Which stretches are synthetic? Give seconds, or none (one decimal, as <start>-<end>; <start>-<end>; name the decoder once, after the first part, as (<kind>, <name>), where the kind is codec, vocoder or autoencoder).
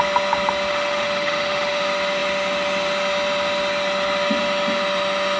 0.7-1.8 (autoencoder, DAC-VAE)